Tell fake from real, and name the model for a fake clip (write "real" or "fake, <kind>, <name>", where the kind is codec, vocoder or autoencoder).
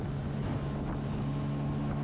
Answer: real